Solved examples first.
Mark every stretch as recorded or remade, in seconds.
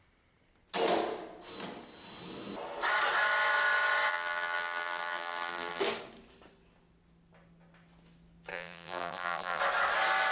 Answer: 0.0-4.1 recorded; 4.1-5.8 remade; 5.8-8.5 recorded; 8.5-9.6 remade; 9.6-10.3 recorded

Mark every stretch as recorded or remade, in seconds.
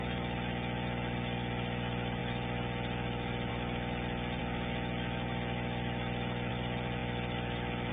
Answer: 0.0-7.9 recorded